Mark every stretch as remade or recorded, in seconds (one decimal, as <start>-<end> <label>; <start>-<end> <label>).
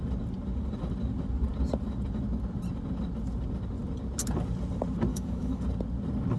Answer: 0.0-5.1 recorded; 5.1-5.6 remade; 5.6-6.4 recorded